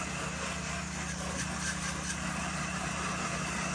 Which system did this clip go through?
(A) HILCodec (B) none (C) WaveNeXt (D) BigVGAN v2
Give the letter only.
B